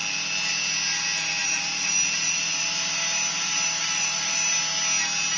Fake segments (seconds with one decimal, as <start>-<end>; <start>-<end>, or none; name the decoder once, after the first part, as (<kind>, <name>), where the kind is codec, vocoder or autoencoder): 1.4-4.6 (vocoder, BigVGAN v2)